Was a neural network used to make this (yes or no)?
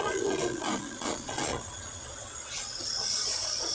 yes